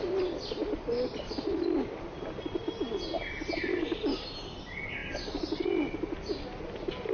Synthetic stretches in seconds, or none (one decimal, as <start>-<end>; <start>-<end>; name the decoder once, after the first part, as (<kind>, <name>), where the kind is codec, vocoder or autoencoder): none